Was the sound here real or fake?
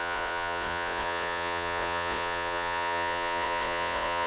fake